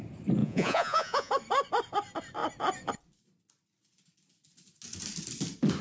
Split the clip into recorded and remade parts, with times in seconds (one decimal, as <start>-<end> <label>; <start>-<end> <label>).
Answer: 0.0-0.4 recorded; 0.4-1.3 remade; 1.3-5.8 recorded

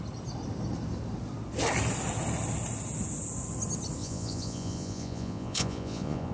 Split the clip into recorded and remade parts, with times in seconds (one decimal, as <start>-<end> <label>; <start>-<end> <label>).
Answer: 0.0-4.0 recorded; 4.0-6.3 remade

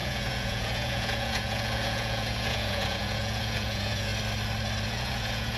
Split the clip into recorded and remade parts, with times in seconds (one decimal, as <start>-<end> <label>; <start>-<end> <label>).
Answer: 0.0-4.1 remade; 4.1-4.8 recorded; 4.8-5.6 remade

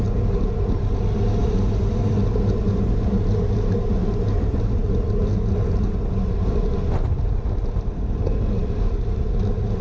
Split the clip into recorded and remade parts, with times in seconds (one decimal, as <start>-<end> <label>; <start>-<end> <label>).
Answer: 0.0-9.8 recorded

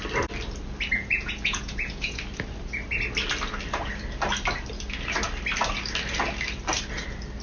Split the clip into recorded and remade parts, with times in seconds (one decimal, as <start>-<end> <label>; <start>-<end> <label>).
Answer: 0.0-1.0 recorded; 1.0-2.2 remade; 2.2-7.4 recorded

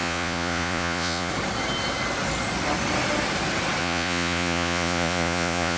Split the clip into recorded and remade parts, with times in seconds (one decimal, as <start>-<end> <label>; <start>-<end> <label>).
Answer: 0.0-1.3 remade; 1.3-3.8 recorded; 3.8-5.8 remade

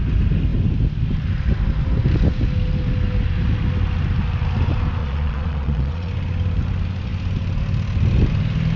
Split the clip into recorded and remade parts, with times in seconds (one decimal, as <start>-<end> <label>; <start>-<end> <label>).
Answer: 0.0-5.0 recorded; 5.0-6.1 remade; 6.1-8.8 recorded

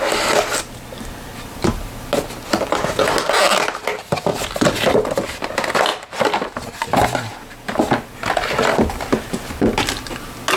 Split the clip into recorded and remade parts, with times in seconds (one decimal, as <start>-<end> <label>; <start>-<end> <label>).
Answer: 0.0-10.6 recorded